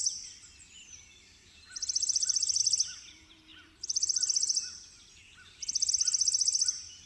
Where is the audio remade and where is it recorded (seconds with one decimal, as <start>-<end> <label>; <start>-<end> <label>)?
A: 0.0-2.6 remade; 2.6-3.5 recorded; 3.5-5.9 remade; 5.9-7.1 recorded

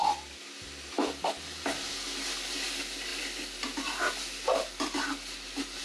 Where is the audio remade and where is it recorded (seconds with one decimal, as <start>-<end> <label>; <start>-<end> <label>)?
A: 0.0-5.8 recorded